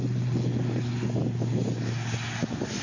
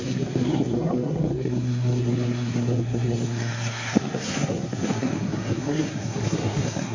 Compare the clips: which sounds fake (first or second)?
second